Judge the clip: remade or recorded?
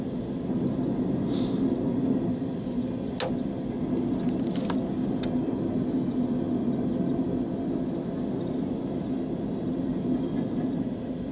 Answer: recorded